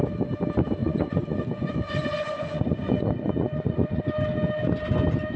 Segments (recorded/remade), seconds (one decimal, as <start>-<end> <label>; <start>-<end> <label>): 0.0-0.8 recorded; 0.8-4.0 remade; 4.0-5.4 recorded